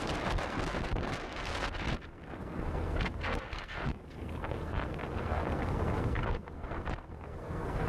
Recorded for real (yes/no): no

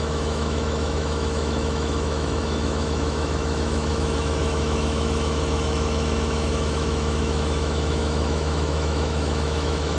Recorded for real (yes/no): no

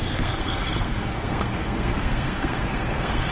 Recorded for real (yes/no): no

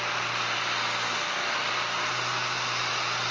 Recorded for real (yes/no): yes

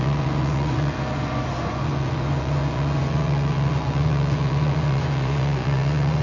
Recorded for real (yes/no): no